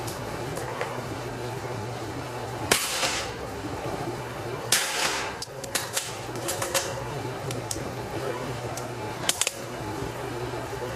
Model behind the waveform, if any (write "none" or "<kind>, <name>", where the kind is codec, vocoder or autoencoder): codec, SNAC